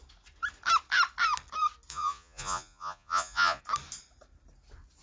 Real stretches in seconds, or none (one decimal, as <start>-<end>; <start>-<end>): 0.0-1.9; 3.6-5.0